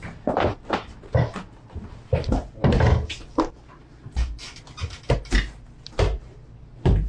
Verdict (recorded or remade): recorded